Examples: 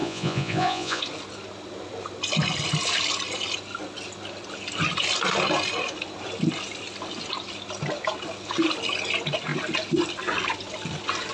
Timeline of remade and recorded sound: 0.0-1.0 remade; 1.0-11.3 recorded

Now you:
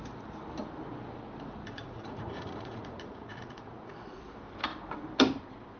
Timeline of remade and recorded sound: 0.0-1.6 recorded; 1.6-4.2 remade; 4.2-5.8 recorded

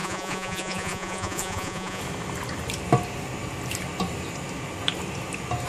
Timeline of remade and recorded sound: 0.0-2.0 remade; 2.0-5.7 recorded

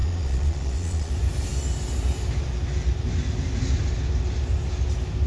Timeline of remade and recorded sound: 0.0-1.1 remade; 1.1-5.3 recorded

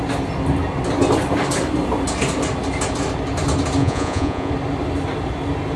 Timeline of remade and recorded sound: 0.0-3.8 recorded; 3.8-4.5 remade; 4.5-5.8 recorded

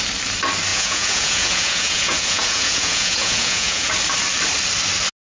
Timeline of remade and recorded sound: 0.0-0.7 recorded; 0.7-3.9 remade; 3.9-5.4 recorded